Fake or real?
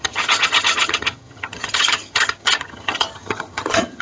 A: fake